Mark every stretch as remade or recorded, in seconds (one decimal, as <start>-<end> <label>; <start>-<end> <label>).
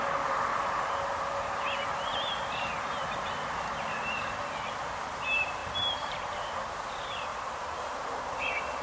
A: 0.0-0.5 recorded; 0.5-1.0 remade; 1.0-2.1 recorded; 2.1-5.1 remade; 5.1-5.6 recorded; 5.6-6.8 remade; 6.8-7.3 recorded; 7.3-8.3 remade; 8.3-8.8 recorded